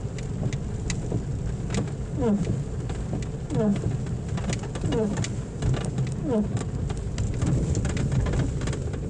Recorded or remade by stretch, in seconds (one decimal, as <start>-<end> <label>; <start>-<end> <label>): 0.0-9.1 recorded